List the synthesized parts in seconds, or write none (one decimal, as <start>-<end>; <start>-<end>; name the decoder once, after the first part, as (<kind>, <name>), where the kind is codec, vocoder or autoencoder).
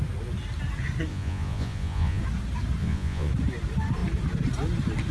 1.1-2.2 (vocoder, Vocos); 2.8-3.3